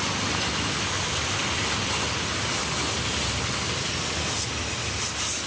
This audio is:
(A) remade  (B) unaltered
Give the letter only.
B